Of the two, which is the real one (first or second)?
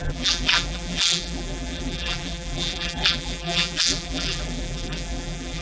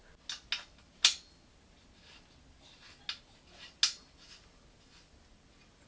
second